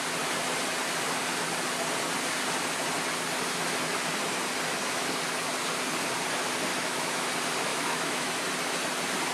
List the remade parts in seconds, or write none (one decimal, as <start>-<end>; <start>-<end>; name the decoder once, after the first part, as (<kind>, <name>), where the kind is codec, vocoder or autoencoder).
6.7-7.3 (autoencoder, DAC-VAE); 7.7-8.3

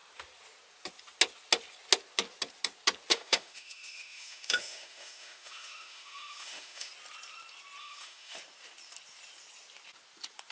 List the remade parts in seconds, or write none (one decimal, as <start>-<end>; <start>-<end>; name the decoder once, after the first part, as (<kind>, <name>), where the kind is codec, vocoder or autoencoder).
3.1-6.9 (autoencoder, DAC-VAE); 7.8-8.4

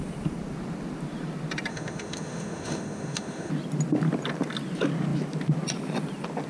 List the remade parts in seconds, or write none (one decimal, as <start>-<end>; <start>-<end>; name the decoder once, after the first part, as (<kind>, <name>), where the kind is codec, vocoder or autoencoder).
1.7-3.5 (autoencoder, DAC-VAE)

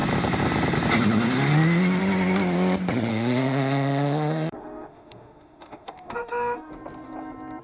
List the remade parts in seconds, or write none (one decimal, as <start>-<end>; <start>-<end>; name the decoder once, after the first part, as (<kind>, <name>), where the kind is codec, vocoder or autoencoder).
3.1-6.7 (autoencoder, DAC-VAE)

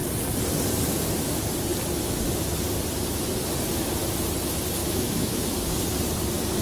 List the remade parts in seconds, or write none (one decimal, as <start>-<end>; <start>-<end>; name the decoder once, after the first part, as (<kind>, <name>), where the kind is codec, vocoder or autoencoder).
4.8-5.5 (autoencoder, DAC-VAE)

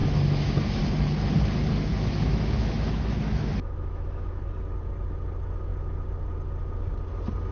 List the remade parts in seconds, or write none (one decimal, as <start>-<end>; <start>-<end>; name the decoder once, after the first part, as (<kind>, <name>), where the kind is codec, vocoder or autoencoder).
0.0-0.8 (autoencoder, DAC-VAE); 1.9-4.4